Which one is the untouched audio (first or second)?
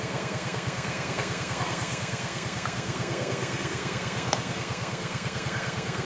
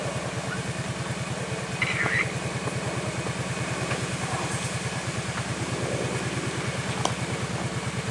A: second